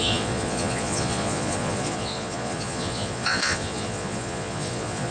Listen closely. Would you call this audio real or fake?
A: fake